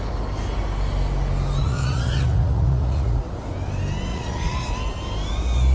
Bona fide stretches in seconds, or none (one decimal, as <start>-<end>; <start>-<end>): 0.0-1.6; 3.3-4.1; 4.7-5.7